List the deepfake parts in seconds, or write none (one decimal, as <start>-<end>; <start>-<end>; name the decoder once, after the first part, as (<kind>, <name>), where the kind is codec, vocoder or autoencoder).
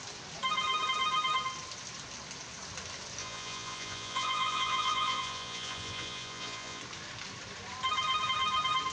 3.2-6.8 (vocoder, Vocos)